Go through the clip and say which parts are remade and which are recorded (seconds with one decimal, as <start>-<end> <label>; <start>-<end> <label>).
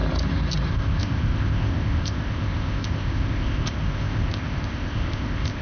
0.0-0.7 recorded; 0.7-5.6 remade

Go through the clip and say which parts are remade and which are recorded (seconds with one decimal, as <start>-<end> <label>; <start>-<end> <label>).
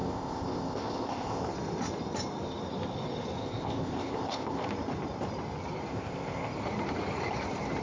0.0-1.5 remade; 1.5-3.4 recorded; 3.4-4.7 remade; 4.7-5.9 recorded; 5.9-6.5 remade; 6.5-7.8 recorded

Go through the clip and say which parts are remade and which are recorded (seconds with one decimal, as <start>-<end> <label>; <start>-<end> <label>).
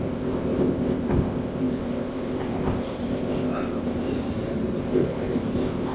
0.0-4.1 remade; 4.1-4.8 recorded; 4.8-5.9 remade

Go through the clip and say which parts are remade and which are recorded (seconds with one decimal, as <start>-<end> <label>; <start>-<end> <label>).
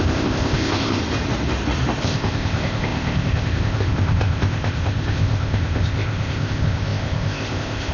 0.0-1.0 remade; 1.0-2.0 recorded; 2.0-7.9 remade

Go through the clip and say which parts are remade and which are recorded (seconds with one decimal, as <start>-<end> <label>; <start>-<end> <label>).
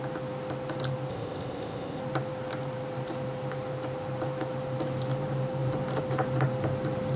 0.0-1.1 recorded; 1.1-2.0 remade; 2.0-7.2 recorded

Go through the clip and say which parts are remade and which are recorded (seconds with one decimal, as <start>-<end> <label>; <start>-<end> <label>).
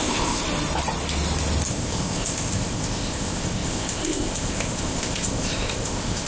0.0-0.4 remade; 0.4-1.7 recorded; 1.7-6.3 remade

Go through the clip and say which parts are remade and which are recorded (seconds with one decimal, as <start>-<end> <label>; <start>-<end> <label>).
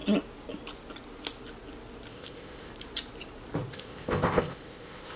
0.0-2.1 recorded; 2.1-2.7 remade; 2.7-3.7 recorded; 3.7-5.2 remade